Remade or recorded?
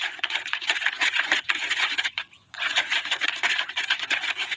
remade